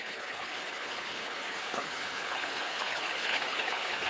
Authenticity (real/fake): fake